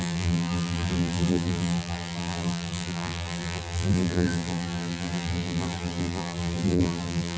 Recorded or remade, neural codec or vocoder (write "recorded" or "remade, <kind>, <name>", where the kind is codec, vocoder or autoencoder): remade, vocoder, BigVGAN v2